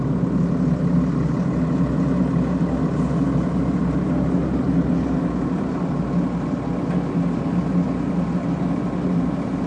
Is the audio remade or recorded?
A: recorded